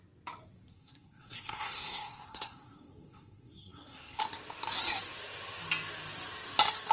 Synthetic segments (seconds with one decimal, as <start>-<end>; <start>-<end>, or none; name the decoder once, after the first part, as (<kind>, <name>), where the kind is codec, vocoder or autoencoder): 0.7-4.2 (codec, SNAC)